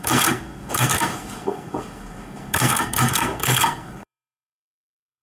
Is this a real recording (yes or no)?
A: no